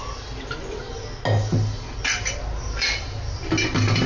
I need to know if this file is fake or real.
real